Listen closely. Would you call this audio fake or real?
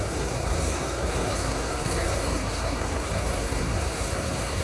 fake